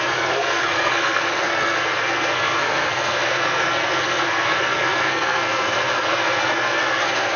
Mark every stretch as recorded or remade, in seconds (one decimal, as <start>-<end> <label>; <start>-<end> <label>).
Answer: 0.0-7.4 remade